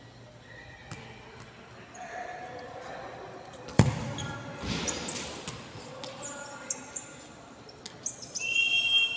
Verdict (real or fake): real